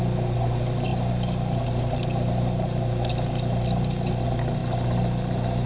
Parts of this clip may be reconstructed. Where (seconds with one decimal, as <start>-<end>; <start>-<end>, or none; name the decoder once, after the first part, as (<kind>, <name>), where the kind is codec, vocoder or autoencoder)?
none